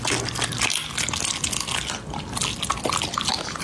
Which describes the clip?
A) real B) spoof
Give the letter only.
A